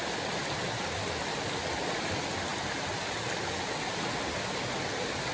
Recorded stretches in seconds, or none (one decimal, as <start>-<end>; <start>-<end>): 0.0-5.3